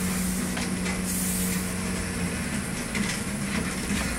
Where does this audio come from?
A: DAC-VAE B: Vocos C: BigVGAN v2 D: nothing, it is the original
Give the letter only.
D